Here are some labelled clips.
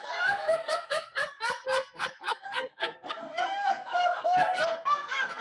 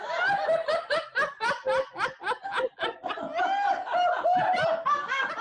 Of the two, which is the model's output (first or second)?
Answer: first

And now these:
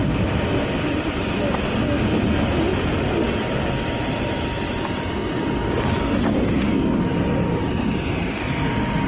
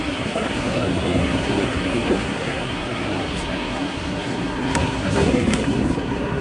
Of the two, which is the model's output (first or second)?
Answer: second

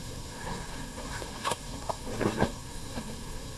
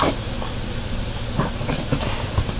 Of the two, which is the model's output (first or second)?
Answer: first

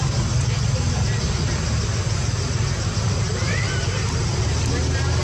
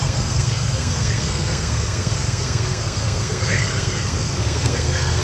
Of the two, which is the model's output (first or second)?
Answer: second